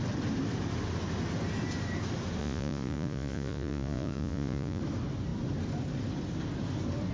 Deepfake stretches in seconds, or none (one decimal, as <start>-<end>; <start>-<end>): 2.4-4.8